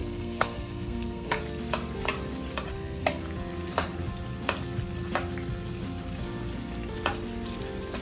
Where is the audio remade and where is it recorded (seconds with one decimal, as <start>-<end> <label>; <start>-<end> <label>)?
0.0-1.4 remade; 1.4-2.7 recorded; 2.7-3.2 remade; 3.2-8.0 recorded